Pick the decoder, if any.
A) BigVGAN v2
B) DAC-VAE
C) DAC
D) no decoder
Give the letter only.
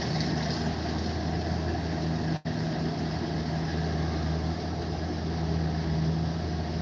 D